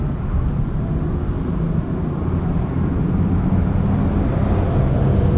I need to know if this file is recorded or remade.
recorded